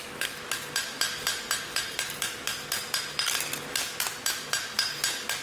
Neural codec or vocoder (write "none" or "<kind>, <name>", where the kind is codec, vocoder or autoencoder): none